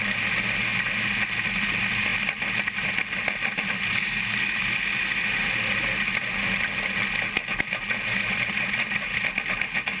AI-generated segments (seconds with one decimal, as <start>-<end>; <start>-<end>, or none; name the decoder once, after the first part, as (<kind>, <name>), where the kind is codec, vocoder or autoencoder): none